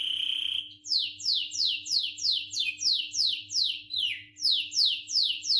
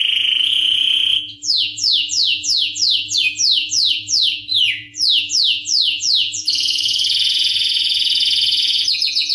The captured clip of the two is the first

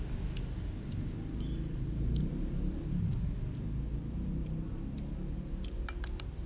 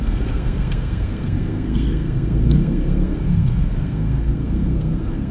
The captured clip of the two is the first